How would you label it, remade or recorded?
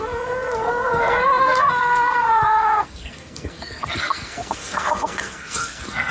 remade